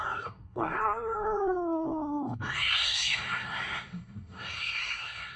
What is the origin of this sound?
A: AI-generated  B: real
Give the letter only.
A